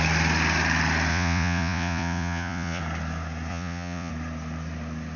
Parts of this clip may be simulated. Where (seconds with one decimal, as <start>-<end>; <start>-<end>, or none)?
1.1-2.8; 3.5-4.1